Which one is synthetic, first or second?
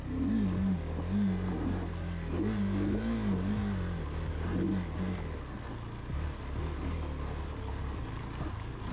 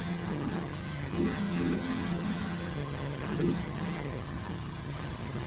second